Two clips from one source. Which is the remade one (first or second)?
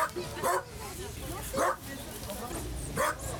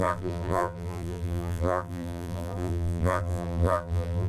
second